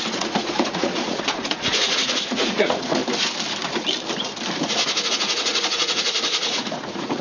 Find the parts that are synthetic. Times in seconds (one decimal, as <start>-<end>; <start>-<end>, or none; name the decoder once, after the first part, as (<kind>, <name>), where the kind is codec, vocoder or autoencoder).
0.0-3.0 (vocoder, Vocos); 5.1-7.2